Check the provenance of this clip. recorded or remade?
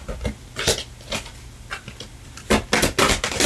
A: recorded